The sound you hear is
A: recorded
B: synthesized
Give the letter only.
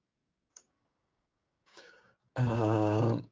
B